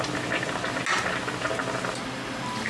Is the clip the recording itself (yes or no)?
yes